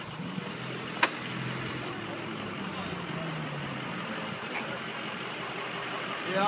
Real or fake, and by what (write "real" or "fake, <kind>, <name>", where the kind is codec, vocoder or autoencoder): real